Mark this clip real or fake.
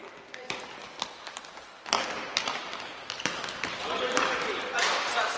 real